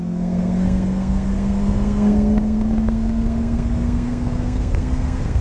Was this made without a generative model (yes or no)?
no